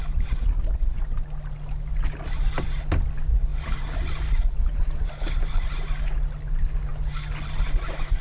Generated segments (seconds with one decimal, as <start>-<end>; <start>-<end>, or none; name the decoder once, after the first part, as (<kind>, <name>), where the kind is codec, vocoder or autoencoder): none